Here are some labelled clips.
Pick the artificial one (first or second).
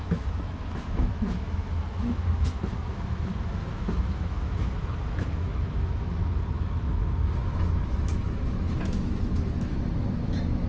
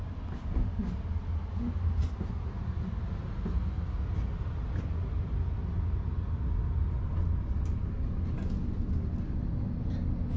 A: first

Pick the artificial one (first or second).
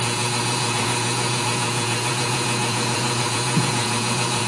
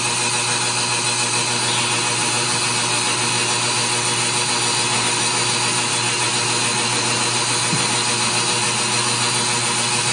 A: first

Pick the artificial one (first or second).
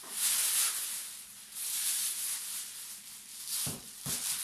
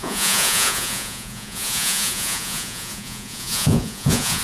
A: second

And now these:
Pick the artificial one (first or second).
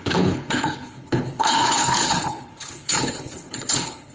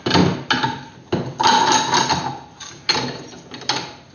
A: first